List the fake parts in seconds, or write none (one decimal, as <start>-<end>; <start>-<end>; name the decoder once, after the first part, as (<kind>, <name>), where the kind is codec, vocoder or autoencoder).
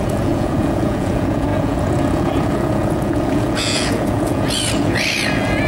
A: 0.0-5.7 (vocoder, Vocos)